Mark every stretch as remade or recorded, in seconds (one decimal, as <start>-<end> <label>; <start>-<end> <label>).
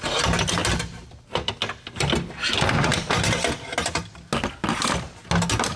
0.0-5.8 recorded